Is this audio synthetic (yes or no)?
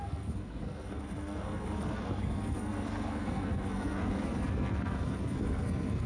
yes